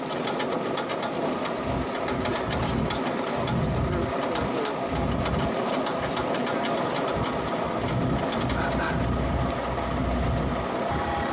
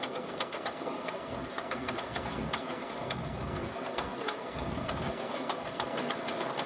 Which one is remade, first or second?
second